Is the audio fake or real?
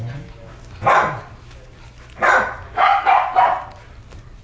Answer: real